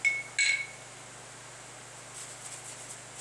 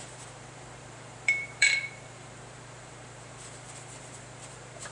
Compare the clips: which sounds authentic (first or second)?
first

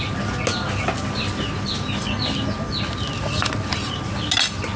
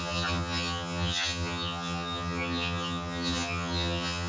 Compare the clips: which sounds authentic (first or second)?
first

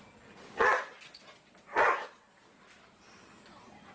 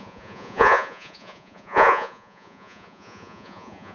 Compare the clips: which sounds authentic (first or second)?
first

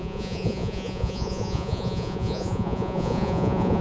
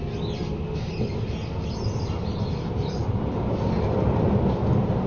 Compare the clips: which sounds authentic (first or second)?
second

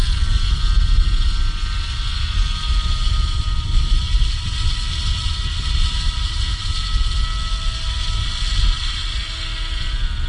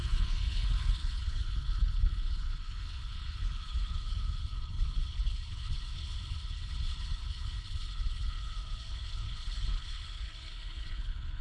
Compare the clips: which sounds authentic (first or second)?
first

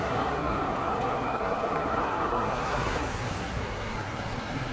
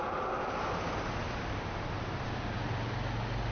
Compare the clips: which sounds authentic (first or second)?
second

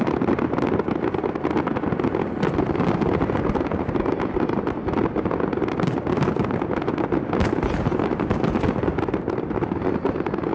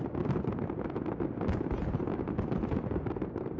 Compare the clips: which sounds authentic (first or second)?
second